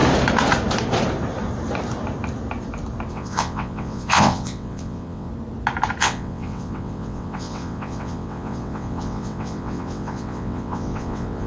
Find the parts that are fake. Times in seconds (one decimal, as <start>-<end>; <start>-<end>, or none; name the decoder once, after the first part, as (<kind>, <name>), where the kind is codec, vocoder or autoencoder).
3.1-5.3 (vocoder, WaveNeXt); 6.0-11.5